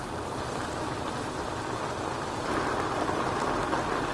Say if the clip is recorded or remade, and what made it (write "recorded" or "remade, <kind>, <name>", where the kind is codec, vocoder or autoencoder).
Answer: recorded